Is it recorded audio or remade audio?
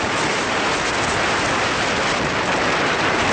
recorded